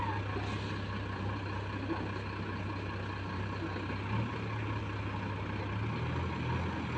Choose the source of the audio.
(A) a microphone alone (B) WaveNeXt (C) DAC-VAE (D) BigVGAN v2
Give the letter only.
A